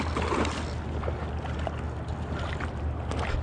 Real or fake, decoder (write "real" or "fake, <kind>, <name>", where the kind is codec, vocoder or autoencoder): real